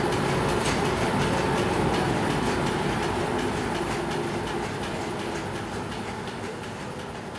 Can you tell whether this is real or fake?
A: real